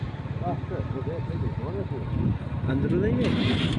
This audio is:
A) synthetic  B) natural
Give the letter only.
B